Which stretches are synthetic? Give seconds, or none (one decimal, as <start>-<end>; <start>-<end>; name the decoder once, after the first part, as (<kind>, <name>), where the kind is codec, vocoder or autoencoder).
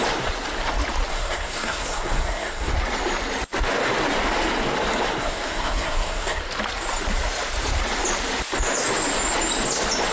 1.1-2.7 (codec, SNAC); 5.2-6.4